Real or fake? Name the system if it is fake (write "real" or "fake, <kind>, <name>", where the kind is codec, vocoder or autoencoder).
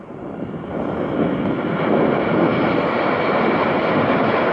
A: real